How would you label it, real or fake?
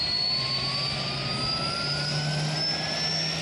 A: real